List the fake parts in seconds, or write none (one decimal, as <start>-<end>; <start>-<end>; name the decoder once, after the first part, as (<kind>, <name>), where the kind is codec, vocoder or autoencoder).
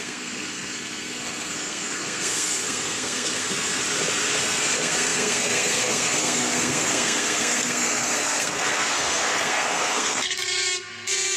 0.0-3.8 (codec, SNAC); 4.4-11.4